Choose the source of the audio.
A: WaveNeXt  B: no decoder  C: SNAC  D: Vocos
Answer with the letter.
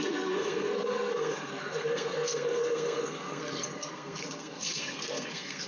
C